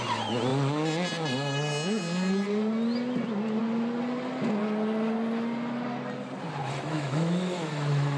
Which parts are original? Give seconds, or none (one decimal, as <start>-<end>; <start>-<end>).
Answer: 0.0-6.6